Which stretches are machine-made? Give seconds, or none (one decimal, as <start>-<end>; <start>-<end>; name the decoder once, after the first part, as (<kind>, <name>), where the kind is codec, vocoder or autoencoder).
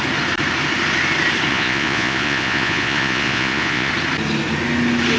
1.5-3.9 (vocoder, Vocos)